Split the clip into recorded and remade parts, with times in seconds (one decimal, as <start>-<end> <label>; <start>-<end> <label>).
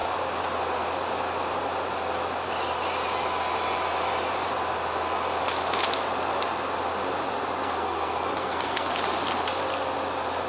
0.0-7.6 recorded; 7.6-8.9 remade; 8.9-10.5 recorded